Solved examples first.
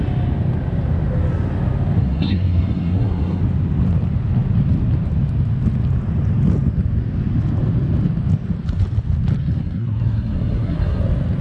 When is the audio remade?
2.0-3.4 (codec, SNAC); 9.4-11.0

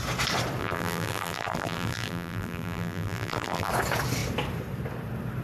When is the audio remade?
0.6-3.7 (vocoder, BigVGAN v2)